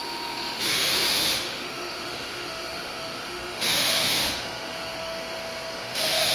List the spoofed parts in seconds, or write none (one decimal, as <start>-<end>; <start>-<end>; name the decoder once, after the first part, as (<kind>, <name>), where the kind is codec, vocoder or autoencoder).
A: 0.0-6.3 (autoencoder, DAC-VAE)